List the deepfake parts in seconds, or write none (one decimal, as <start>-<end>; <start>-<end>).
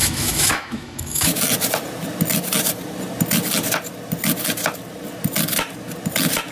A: 0.0-1.4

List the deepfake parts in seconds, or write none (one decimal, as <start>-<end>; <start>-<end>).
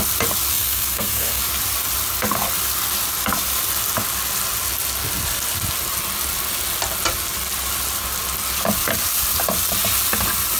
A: 0.5-1.4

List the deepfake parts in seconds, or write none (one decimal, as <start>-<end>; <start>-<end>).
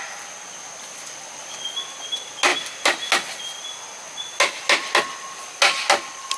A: none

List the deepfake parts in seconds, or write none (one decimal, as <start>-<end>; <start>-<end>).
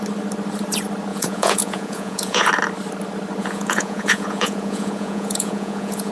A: 1.1-2.5; 3.4-6.1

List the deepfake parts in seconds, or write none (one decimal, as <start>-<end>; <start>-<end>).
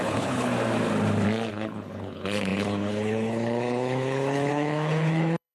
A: 0.0-0.5; 1.5-5.5